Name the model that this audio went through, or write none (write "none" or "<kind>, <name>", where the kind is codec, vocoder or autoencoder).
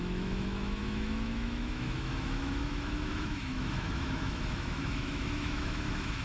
autoencoder, DAC-VAE